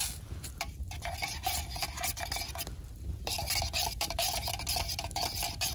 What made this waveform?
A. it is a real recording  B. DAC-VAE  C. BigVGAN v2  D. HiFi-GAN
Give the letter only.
A